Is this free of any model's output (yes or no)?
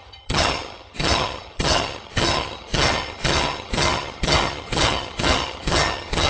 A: no